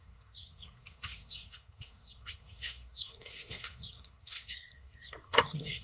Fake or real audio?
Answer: fake